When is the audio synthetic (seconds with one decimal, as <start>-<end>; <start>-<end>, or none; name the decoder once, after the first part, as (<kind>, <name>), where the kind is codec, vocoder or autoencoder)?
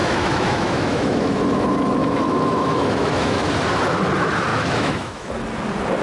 0.0-1.4 (autoencoder, DAC-VAE); 2.0-3.4; 4.5-5.3